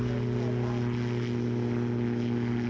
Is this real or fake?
real